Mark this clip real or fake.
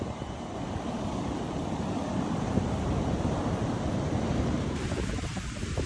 fake